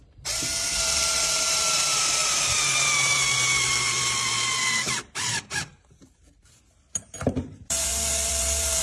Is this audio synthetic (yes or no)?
yes